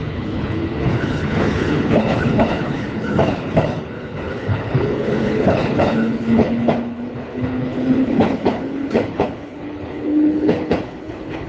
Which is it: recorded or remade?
remade